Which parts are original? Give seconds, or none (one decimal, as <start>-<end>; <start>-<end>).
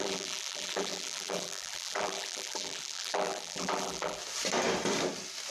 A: 4.2-5.5